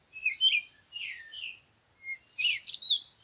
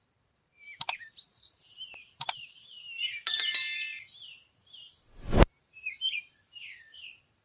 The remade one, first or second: second